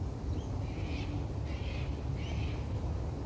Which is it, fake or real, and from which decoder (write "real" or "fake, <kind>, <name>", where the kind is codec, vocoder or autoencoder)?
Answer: real